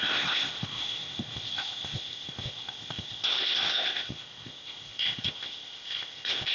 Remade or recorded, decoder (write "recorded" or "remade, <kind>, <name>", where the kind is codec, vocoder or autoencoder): remade, codec, ZipCodec